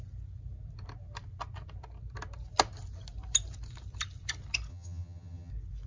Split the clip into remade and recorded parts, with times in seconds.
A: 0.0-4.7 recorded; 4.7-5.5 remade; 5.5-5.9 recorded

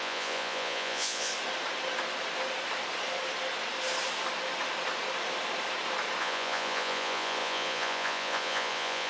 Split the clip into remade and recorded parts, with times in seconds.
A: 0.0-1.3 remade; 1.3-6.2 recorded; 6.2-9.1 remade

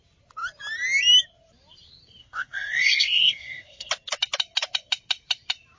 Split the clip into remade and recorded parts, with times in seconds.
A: 0.0-2.2 recorded; 2.2-3.9 remade; 3.9-5.8 recorded

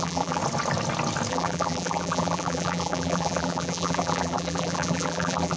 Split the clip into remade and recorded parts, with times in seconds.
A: 0.0-0.4 remade; 0.4-1.3 recorded; 1.3-5.6 remade

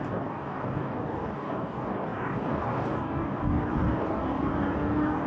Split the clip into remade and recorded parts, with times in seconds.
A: 0.0-5.3 remade